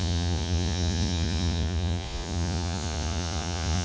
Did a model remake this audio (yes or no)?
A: yes